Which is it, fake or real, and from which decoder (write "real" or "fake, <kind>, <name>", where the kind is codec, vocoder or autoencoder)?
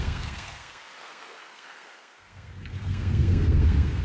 fake, codec, SNAC